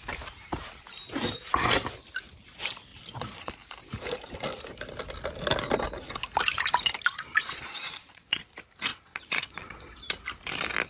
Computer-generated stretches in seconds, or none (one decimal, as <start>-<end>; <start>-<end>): 2.9-3.5; 7.3-8.4; 8.9-10.0